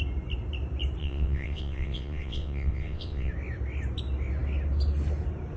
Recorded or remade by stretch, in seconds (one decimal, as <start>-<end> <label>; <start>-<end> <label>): 0.0-1.0 recorded; 1.0-3.3 remade; 3.3-5.6 recorded